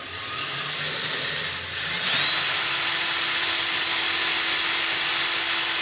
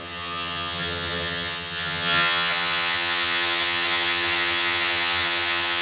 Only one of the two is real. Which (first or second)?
first